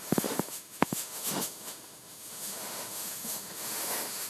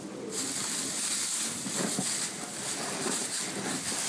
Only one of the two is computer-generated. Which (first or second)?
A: first